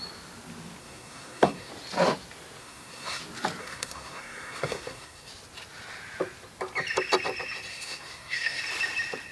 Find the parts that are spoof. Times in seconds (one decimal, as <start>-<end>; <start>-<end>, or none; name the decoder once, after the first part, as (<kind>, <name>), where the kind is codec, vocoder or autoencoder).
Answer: 0.8-1.7 (codec, SNAC); 2.6-3.2; 3.6-5.3; 7.7-8.6